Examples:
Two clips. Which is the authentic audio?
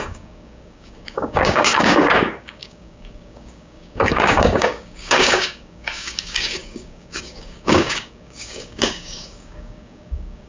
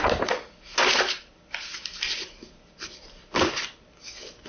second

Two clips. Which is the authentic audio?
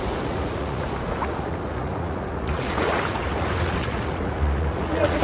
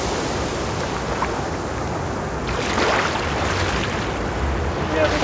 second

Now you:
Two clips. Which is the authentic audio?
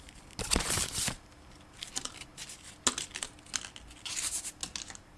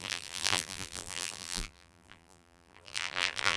first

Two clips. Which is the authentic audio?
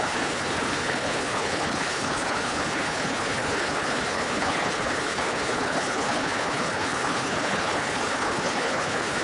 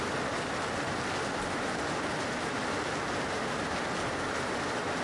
second